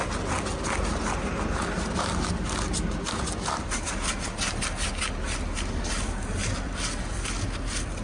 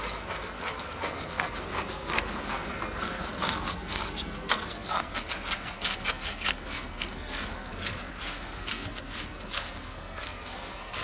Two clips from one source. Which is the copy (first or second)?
second